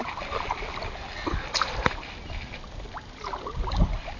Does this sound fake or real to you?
real